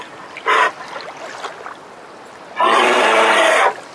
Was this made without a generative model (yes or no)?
yes